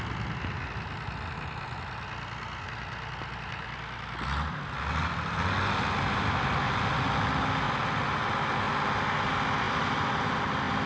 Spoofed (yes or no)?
no